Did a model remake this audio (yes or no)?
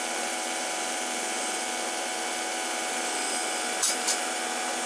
yes